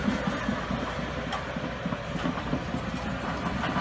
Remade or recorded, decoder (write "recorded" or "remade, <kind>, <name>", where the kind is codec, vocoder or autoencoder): recorded